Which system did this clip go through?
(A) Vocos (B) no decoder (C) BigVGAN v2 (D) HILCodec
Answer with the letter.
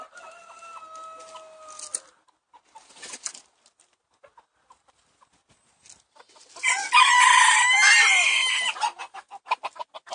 B